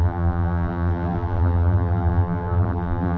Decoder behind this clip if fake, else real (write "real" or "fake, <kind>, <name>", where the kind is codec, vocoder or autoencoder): fake, vocoder, BigVGAN v2